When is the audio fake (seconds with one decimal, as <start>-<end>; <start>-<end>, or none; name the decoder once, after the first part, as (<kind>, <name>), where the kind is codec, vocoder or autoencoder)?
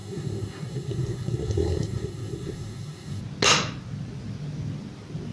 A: 0.0-3.2 (codec, SNAC)